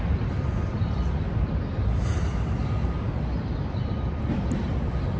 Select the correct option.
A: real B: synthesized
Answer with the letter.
A